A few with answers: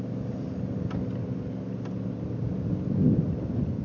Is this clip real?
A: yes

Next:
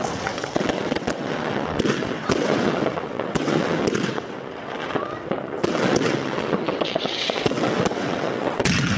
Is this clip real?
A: no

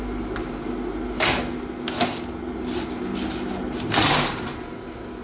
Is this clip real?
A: yes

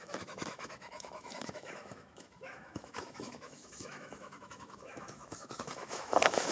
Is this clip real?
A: no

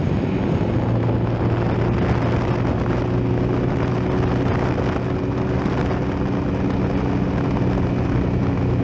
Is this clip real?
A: yes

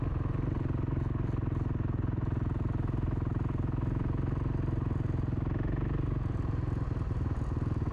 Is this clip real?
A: yes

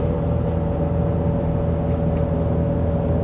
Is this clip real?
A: yes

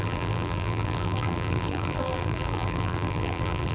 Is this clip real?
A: no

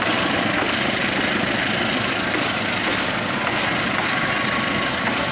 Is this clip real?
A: yes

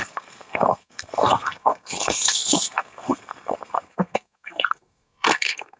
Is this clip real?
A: no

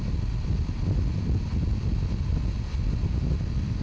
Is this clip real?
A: yes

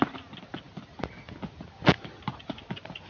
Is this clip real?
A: yes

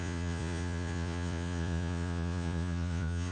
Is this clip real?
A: no